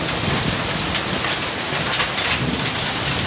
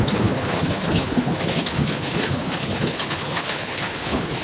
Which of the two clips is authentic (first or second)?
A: first